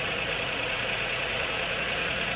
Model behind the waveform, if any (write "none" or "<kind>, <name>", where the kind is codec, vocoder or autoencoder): vocoder, Vocos